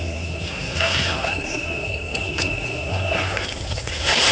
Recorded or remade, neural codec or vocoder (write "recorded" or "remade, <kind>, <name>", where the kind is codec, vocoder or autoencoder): remade, codec, SNAC